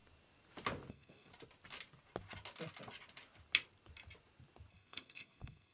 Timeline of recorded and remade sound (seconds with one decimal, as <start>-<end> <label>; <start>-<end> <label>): 0.0-0.9 recorded; 0.9-1.3 remade; 1.3-4.7 recorded; 4.7-5.7 remade